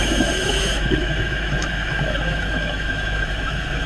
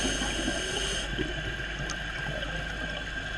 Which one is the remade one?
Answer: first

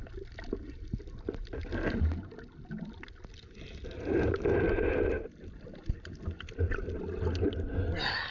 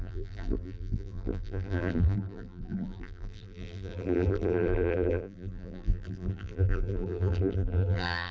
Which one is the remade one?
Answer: second